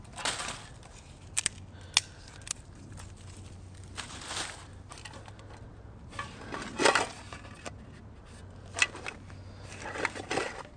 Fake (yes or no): no